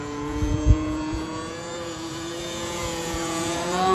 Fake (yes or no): yes